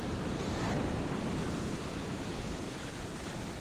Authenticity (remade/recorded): recorded